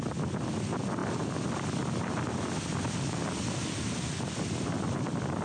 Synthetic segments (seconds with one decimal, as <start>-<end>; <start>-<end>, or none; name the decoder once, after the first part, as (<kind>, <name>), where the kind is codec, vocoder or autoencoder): none